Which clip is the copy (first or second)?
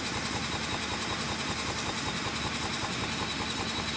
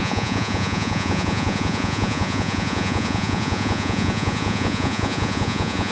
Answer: second